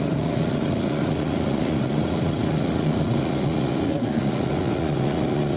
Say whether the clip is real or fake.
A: fake